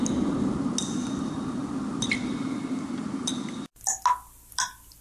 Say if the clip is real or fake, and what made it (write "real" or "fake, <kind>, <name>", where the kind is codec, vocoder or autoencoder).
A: real